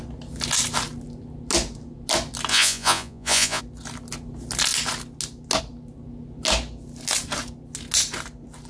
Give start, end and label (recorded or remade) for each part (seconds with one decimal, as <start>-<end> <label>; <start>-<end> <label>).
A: 0.0-2.5 recorded; 2.5-3.6 remade; 3.6-8.7 recorded